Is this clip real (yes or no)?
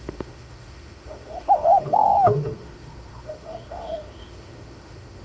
no